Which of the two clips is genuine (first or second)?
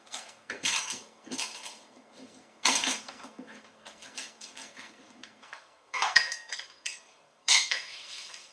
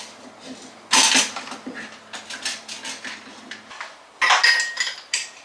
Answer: second